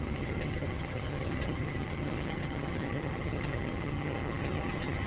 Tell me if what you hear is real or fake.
fake